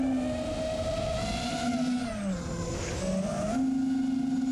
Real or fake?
real